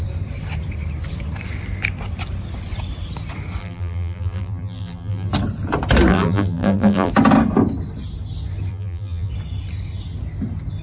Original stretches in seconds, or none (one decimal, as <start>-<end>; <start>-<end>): 0.0-3.6; 5.3-6.1; 7.1-8.7; 9.3-10.8